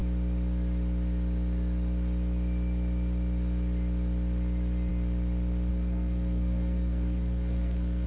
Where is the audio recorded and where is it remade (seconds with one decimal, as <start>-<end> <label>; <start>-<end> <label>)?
0.0-5.7 recorded; 5.7-8.1 remade